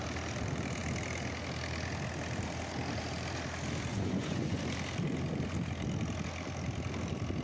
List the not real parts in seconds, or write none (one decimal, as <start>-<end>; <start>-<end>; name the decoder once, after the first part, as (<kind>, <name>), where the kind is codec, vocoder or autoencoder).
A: 3.9-4.6 (vocoder, Vocos)

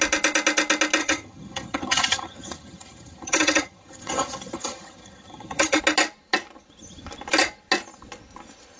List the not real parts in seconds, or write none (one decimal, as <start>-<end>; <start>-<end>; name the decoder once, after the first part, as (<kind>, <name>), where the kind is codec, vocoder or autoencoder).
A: 1.0-5.8 (vocoder, HiFi-GAN)

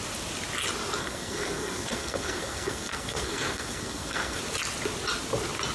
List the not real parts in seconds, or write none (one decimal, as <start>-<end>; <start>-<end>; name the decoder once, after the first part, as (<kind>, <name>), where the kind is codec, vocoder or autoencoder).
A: 1.0-4.4 (codec, SNAC)

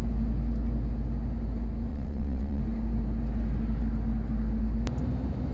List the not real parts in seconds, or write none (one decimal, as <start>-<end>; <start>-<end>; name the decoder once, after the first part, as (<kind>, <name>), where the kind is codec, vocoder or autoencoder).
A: 1.9-2.6 (vocoder, WaveNeXt)

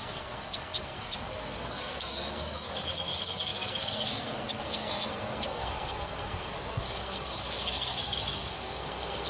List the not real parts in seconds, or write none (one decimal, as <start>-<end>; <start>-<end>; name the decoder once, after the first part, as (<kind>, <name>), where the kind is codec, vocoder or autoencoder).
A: 0.0-9.3 (codec, SNAC)

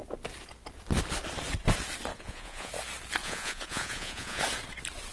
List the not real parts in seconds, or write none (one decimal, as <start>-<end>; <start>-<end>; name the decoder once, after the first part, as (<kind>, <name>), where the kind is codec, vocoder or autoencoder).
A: 2.1-2.7 (vocoder, Vocos); 3.2-4.4

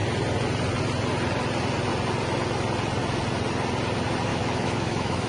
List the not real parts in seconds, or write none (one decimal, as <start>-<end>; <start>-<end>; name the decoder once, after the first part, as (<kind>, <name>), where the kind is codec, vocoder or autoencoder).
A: 4.3-5.3 (autoencoder, DAC-VAE)